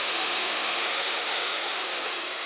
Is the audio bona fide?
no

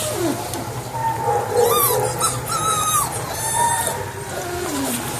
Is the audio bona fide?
yes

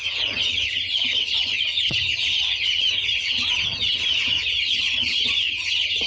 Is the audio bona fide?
no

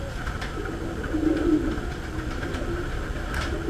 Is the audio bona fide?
yes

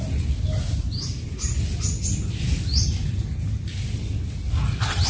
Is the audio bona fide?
yes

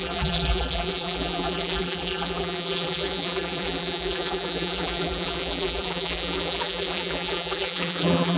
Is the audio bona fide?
no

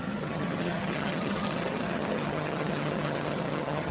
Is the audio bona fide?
no